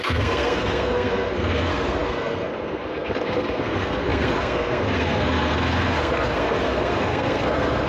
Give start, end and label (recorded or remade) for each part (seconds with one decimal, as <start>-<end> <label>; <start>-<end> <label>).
0.0-7.9 remade